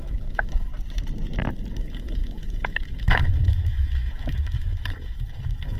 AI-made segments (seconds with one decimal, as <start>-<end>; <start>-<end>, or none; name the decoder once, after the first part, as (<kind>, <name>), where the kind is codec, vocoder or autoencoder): 0.0-0.7 (autoencoder, DAC-VAE); 1.7-5.8